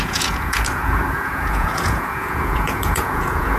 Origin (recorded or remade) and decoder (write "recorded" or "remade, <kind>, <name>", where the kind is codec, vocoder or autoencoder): remade, vocoder, Vocos